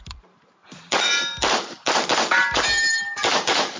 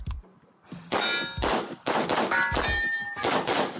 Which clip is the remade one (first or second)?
first